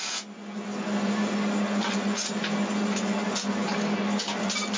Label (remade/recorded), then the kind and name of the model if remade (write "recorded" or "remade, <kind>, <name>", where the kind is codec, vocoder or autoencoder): recorded